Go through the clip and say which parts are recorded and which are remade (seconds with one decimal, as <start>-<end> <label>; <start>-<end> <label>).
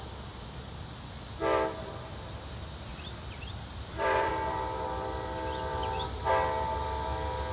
0.0-2.9 recorded; 2.9-4.3 remade; 4.3-5.7 recorded; 5.7-6.3 remade; 6.3-7.5 recorded